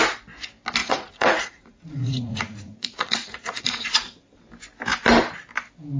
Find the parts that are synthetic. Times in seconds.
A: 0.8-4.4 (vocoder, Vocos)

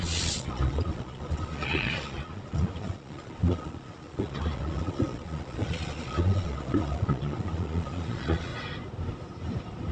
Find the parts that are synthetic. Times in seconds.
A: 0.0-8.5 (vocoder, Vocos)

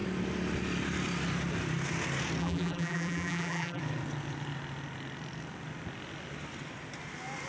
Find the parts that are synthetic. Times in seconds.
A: 2.4-3.8 (vocoder, BigVGAN v2)

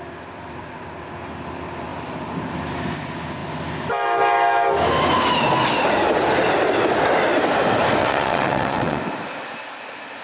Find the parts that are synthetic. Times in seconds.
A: 8.0-9.0 (vocoder, WaveNeXt)

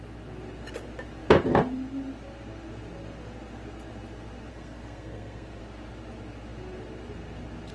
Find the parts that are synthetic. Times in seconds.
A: 4.5-5.6 (codec, SNAC)